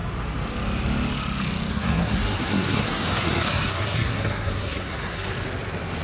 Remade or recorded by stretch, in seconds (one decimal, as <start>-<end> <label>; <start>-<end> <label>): 0.0-1.7 recorded; 1.7-5.3 remade; 5.3-6.0 recorded